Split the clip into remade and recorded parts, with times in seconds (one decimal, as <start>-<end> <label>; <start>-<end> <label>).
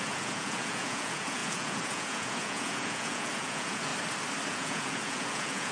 0.0-3.9 remade; 3.9-4.5 recorded; 4.5-5.7 remade